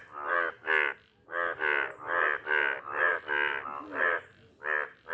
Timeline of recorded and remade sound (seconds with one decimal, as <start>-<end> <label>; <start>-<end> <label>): 0.0-5.1 recorded